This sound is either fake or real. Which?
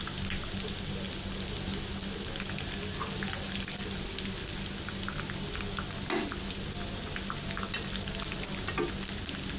real